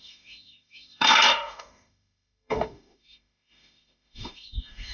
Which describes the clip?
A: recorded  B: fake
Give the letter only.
B